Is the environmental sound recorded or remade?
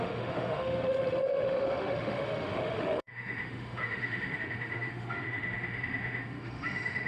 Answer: remade